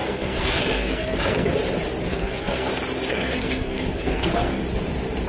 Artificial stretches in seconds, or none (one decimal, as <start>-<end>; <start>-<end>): 0.0-1.5; 2.1-2.7; 3.1-4.6

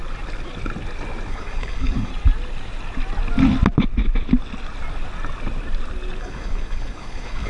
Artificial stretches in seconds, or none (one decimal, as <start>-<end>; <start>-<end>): 1.3-2.1; 6.2-7.5

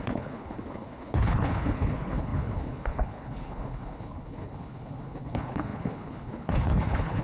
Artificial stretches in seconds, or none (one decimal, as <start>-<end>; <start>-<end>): 0.0-7.2

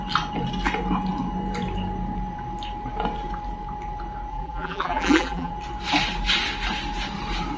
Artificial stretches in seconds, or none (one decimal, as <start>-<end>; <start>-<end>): 4.3-5.5

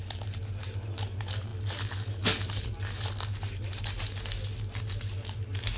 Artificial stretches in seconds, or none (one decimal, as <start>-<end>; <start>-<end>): none